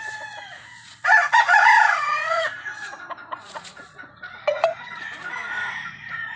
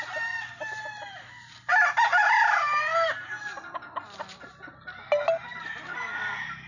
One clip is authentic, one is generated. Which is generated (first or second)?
first